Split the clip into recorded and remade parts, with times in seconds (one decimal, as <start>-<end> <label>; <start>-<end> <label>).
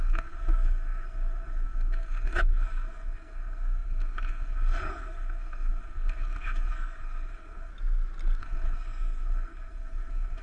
0.0-7.7 remade; 7.7-8.4 recorded; 8.4-10.4 remade